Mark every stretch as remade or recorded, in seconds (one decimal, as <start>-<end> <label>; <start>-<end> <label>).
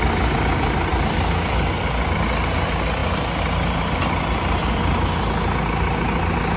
0.0-6.6 recorded